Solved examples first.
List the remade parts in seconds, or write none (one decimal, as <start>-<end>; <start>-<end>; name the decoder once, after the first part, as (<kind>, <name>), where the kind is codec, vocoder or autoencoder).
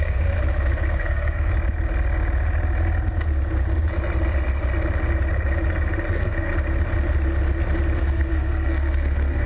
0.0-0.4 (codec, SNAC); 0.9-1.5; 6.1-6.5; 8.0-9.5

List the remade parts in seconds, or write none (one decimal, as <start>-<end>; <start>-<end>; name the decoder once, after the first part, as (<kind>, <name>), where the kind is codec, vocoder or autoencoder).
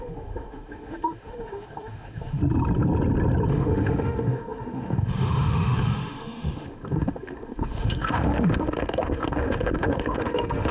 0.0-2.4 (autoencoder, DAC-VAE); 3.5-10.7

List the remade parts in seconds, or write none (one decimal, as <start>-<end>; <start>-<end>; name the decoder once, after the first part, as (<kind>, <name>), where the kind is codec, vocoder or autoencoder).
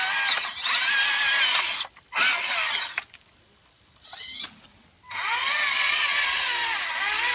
none